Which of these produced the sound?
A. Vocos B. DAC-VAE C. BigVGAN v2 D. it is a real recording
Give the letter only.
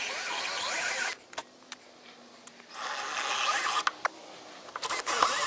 D